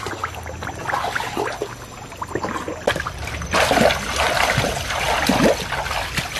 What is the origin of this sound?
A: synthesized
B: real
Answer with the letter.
A